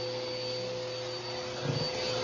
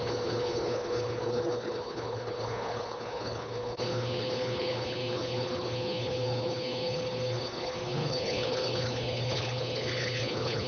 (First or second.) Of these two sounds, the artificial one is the second